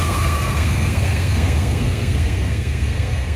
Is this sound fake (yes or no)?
yes